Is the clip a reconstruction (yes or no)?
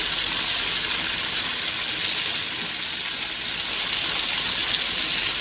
no